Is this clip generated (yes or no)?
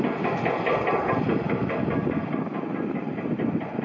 no